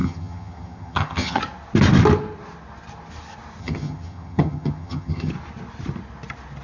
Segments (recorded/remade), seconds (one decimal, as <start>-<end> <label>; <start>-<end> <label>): 0.0-1.4 remade; 1.4-3.6 recorded; 3.6-5.3 remade; 5.3-6.6 recorded